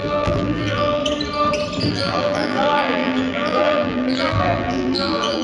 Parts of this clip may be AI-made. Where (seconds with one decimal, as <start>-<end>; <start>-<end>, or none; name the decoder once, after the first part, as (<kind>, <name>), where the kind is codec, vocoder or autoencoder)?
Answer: 0.0-1.0 (vocoder, BigVGAN v2); 1.9-5.4